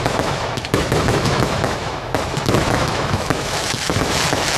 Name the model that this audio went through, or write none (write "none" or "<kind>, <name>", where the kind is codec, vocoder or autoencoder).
autoencoder, DAC-VAE